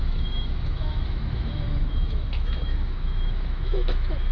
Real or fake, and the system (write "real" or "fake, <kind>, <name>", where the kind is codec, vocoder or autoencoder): fake, autoencoder, DAC-VAE